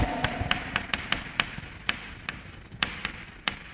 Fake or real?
fake